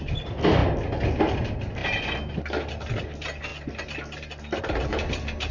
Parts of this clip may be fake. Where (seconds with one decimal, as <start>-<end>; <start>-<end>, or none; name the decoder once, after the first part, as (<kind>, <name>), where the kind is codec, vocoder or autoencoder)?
none